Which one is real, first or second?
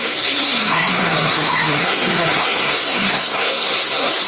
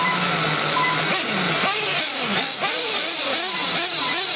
second